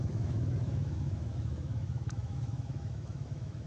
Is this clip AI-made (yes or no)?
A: yes